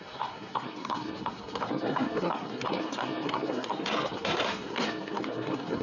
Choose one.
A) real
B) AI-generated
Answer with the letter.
B